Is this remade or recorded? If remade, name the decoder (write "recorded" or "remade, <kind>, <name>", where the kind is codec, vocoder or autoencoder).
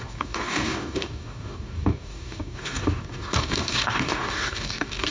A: remade, codec, DAC